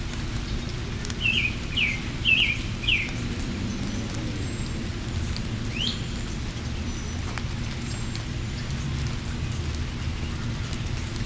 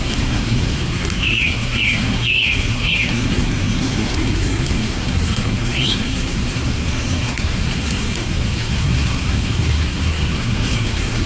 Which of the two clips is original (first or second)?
first